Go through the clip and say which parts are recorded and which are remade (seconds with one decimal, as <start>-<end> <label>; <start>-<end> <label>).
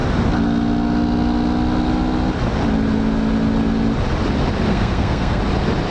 0.0-4.7 recorded; 4.7-5.4 remade; 5.4-5.9 recorded